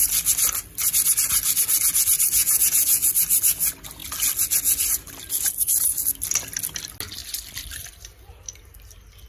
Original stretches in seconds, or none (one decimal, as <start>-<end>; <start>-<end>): 0.0-2.4; 3.1-9.3